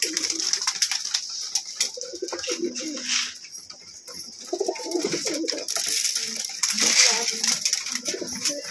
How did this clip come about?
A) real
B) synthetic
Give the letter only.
A